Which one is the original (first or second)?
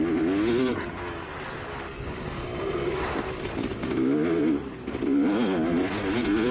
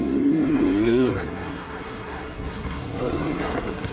first